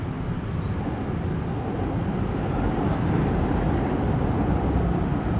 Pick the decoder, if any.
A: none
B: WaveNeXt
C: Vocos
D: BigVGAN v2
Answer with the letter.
A